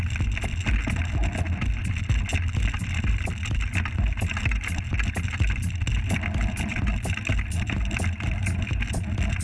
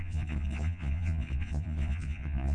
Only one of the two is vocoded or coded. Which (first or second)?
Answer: second